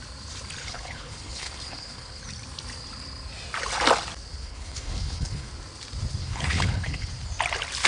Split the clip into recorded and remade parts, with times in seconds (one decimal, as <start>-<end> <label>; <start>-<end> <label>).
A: 0.0-0.6 recorded; 0.6-2.2 remade; 2.2-4.4 recorded; 4.4-5.5 remade; 5.5-6.2 recorded; 6.2-7.1 remade; 7.1-7.9 recorded